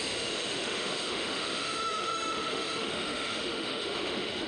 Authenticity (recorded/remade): remade